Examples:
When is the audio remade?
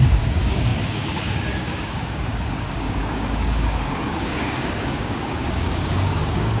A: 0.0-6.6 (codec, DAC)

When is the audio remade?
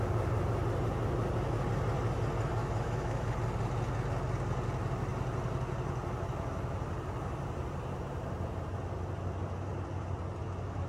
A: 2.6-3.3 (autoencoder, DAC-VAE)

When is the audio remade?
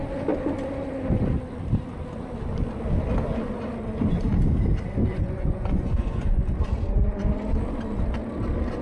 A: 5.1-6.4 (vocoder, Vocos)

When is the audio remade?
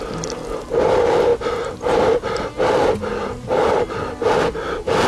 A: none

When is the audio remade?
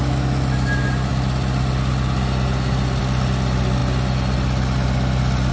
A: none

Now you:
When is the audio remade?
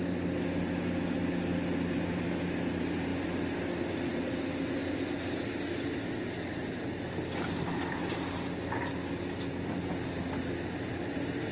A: none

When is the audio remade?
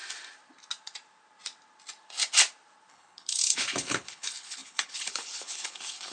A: 2.9-6.1 (codec, HILCodec)